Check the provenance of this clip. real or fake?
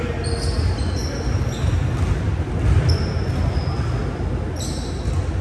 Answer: real